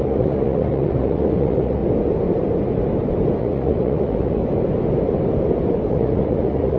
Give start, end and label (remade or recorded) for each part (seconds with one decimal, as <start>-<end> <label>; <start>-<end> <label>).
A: 0.0-1.8 remade; 1.8-3.4 recorded; 3.4-4.4 remade; 4.4-5.9 recorded; 5.9-6.8 remade